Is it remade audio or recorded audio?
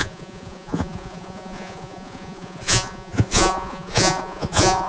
remade